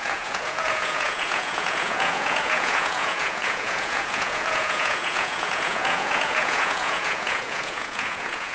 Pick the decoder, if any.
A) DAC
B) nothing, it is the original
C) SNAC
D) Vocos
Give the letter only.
D